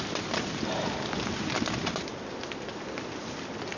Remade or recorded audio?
remade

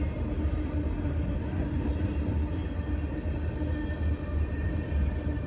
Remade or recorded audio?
remade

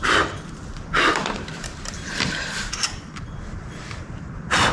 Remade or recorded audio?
remade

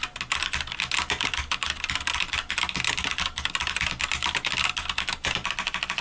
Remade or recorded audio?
recorded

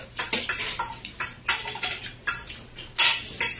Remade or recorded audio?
recorded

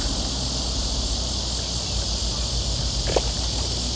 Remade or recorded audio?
recorded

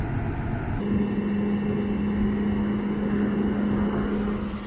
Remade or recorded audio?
recorded